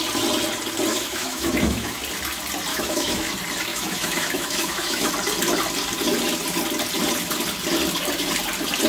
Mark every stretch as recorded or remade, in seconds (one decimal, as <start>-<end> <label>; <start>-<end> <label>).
0.0-0.9 recorded; 0.9-2.0 remade; 2.0-2.7 recorded; 2.7-3.3 remade; 3.3-3.7 recorded; 3.7-5.1 remade; 5.1-8.9 recorded